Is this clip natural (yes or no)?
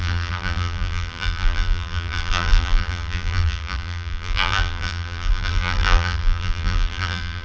no